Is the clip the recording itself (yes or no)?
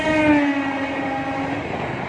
yes